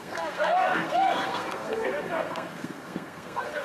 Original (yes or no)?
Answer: no